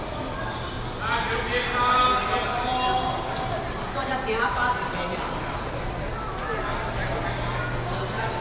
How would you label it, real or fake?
real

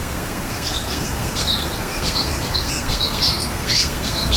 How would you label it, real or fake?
fake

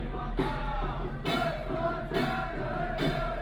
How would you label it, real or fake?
fake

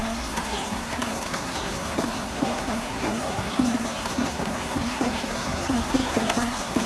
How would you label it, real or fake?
fake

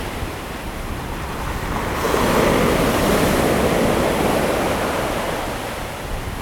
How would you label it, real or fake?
real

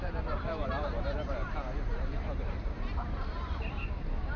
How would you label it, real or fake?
fake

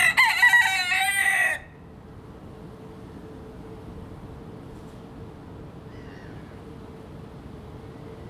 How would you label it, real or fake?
real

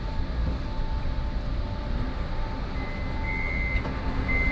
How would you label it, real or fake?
real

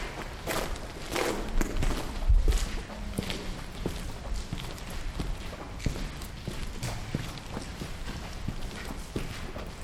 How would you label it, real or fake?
real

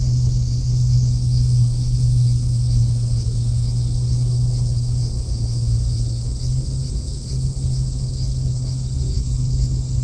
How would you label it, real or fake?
fake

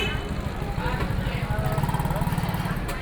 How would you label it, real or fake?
real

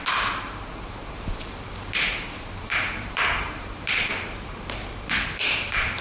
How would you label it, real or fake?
fake